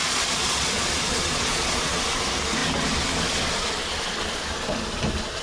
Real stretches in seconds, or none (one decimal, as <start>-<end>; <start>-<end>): 2.0-5.4